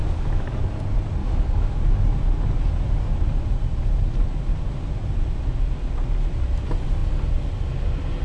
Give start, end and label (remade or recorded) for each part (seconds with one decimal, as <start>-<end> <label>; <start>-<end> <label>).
0.0-0.6 remade; 0.6-1.2 recorded; 1.2-2.0 remade; 2.0-8.2 recorded